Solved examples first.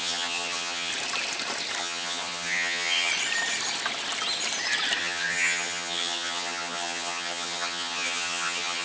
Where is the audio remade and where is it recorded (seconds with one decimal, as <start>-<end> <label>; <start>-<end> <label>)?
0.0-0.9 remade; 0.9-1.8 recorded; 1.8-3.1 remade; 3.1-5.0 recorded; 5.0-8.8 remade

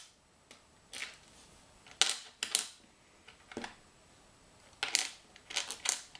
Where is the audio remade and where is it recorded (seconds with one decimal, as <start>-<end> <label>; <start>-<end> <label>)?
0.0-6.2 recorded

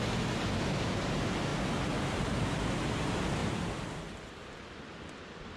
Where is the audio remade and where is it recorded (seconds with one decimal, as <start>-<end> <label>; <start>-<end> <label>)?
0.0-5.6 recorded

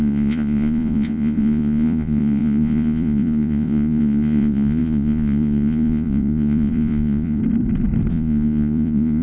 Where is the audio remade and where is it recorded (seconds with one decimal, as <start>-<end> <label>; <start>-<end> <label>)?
0.0-7.4 remade; 7.4-8.1 recorded; 8.1-9.2 remade